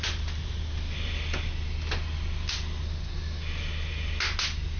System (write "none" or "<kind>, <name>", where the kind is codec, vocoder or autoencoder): none